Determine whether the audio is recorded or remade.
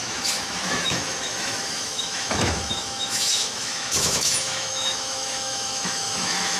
remade